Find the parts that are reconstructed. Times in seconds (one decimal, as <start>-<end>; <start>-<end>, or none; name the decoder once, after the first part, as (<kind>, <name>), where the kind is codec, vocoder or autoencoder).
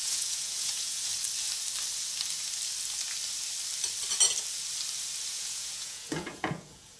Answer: 0.0-1.1 (vocoder, Vocos); 5.3-7.0